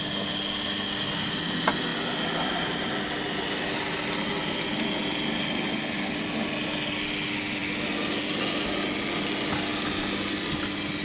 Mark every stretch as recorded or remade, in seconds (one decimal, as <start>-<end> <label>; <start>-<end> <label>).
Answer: 0.0-11.0 recorded